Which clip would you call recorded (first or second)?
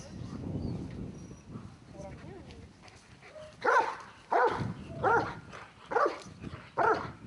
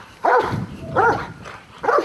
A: first